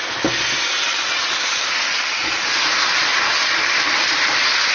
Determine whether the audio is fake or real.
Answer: real